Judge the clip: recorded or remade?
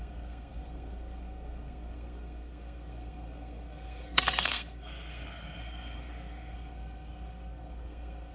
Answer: remade